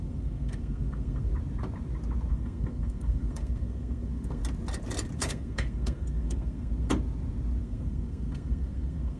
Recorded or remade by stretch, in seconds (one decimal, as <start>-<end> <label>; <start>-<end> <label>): 0.0-1.3 remade; 1.3-2.3 recorded; 2.3-4.4 remade; 4.4-5.2 recorded; 5.2-6.9 remade; 6.9-7.6 recorded; 7.6-9.2 remade